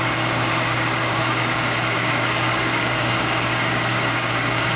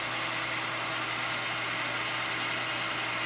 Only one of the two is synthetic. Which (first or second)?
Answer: first